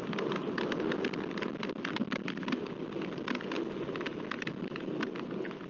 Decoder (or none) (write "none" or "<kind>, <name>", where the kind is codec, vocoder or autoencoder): none